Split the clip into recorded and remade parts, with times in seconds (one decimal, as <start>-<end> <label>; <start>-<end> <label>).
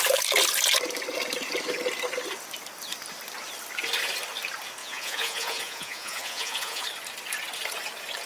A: 0.0-4.8 recorded; 4.8-6.8 remade; 6.8-8.3 recorded